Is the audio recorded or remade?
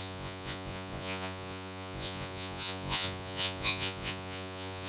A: remade